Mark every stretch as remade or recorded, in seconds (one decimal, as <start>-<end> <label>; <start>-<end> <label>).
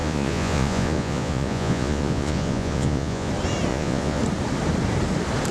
0.0-3.3 remade; 3.3-3.7 recorded; 3.7-4.2 remade; 4.2-5.5 recorded